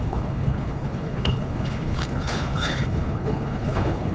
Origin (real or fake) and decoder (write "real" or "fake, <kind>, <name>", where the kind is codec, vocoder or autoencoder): fake, codec, HILCodec